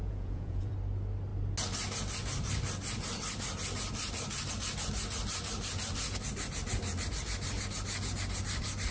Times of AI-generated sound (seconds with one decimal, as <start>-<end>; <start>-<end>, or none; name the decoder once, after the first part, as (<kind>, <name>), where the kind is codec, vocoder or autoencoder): 0.0-0.7 (vocoder, Vocos)